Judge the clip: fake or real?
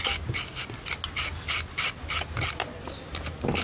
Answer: real